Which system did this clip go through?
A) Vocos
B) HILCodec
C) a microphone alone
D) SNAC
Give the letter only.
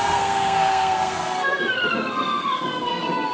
D